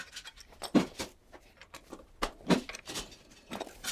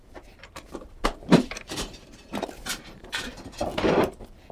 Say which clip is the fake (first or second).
second